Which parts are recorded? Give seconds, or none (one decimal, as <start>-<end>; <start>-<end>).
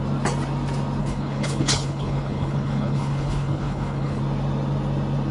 0.0-1.0; 4.2-5.3